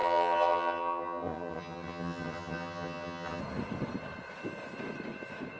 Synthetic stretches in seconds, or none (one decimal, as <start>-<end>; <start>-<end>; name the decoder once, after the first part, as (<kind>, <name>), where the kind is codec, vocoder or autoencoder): 0.0-3.4 (vocoder, HiFi-GAN)